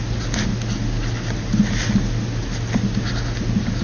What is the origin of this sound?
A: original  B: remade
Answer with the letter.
A